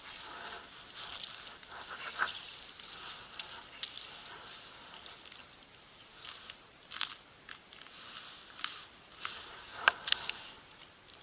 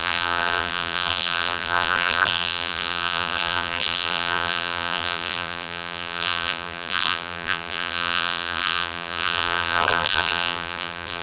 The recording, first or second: first